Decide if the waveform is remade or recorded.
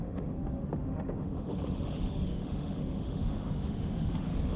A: remade